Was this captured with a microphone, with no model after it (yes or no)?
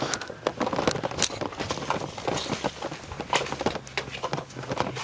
yes